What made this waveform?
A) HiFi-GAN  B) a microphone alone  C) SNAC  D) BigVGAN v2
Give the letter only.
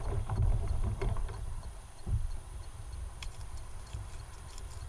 D